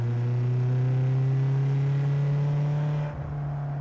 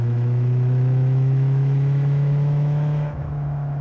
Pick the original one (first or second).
first